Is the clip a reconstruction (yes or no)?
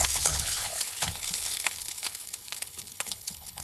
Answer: yes